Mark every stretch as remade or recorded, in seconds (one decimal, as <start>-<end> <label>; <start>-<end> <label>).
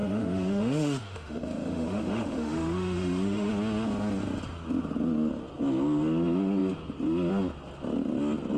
0.0-3.5 remade; 3.5-8.6 recorded